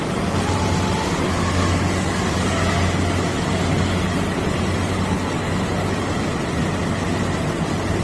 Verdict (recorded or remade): recorded